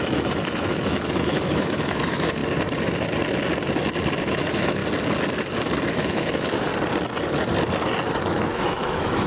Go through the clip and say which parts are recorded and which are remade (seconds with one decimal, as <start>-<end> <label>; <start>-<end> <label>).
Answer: 0.0-2.4 remade; 2.4-4.2 recorded; 4.2-4.8 remade; 4.8-5.9 recorded; 5.9-6.7 remade; 6.7-8.2 recorded; 8.2-9.3 remade